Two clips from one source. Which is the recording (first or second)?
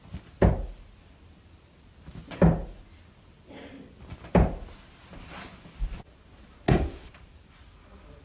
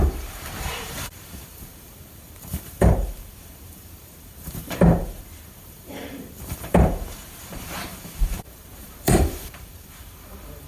first